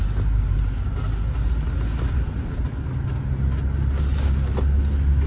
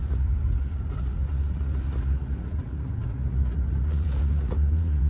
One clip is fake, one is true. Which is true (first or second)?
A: first